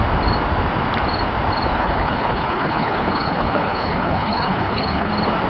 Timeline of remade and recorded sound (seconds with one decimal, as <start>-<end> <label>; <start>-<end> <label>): 0.0-1.8 recorded; 1.8-5.1 remade; 5.1-5.5 recorded